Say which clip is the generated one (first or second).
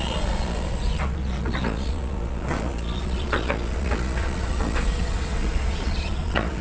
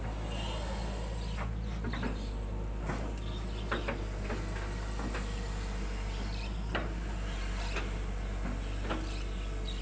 first